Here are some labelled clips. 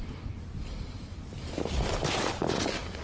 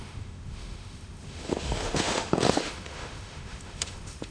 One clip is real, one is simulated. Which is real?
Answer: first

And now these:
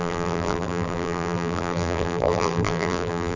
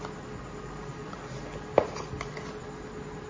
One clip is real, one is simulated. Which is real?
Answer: second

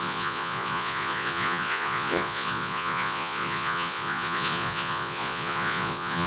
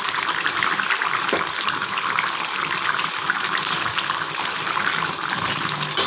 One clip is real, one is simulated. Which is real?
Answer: second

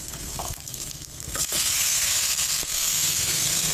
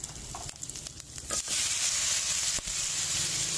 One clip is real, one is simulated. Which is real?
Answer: second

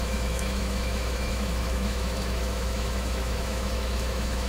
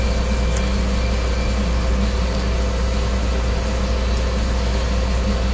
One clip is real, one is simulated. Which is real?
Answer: second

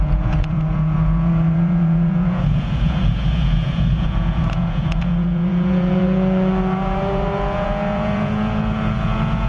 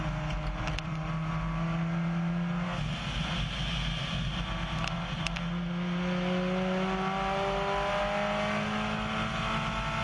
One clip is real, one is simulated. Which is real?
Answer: second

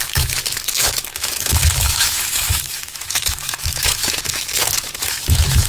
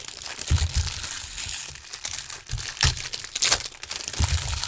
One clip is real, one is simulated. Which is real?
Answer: second